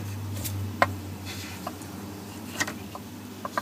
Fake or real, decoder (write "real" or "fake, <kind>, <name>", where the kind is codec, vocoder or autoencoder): fake, vocoder, BigVGAN v2